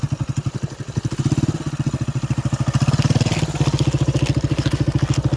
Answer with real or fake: real